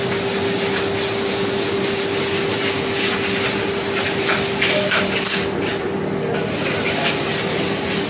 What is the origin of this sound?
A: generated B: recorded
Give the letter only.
B